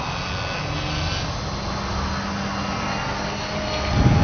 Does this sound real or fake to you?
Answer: real